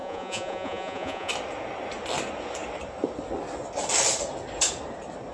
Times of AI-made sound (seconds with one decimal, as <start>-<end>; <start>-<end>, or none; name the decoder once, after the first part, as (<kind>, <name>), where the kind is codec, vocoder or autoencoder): 0.0-1.3 (vocoder, Vocos)

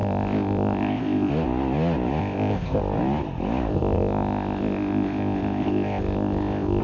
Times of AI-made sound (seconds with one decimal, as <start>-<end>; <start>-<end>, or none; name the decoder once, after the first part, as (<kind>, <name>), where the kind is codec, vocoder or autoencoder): 0.0-1.3 (codec, ZipCodec); 2.2-2.8; 3.7-6.8

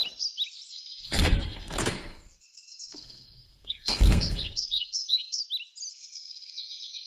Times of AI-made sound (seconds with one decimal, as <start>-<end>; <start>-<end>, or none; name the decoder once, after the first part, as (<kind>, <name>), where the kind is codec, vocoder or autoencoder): 0.7-5.4 (codec, SNAC); 5.9-7.1